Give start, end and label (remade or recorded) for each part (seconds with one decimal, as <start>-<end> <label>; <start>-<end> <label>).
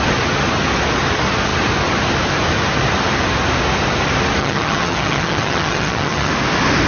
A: 0.0-4.4 recorded; 4.4-6.3 remade; 6.3-6.9 recorded